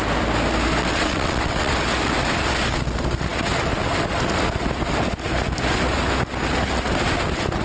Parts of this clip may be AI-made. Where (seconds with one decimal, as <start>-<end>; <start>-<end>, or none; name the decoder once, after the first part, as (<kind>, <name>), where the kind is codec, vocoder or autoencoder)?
0.8-1.7 (vocoder, WaveNeXt)